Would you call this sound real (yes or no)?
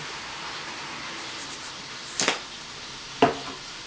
yes